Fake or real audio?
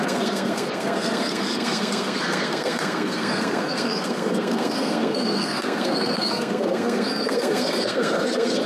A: fake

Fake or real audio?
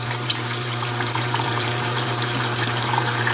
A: fake